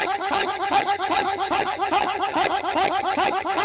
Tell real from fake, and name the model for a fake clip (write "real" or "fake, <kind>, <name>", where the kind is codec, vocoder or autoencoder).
fake, vocoder, HiFi-GAN